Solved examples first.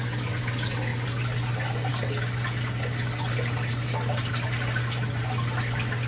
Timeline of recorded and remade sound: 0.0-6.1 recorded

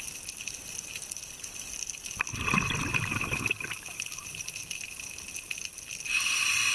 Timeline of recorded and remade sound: 0.0-2.9 recorded; 2.9-5.1 remade; 5.1-6.7 recorded

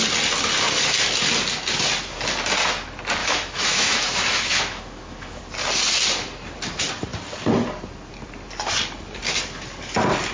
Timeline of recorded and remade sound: 0.0-3.2 recorded; 3.2-5.4 remade; 5.4-10.3 recorded